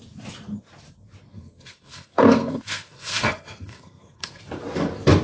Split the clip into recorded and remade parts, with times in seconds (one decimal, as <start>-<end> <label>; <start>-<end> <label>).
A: 0.0-1.3 recorded; 1.3-4.4 remade; 4.4-5.2 recorded